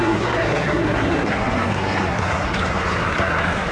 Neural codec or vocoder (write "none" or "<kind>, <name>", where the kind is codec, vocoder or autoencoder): codec, SNAC